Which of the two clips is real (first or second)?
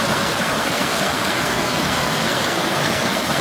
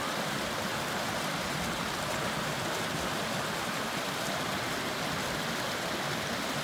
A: second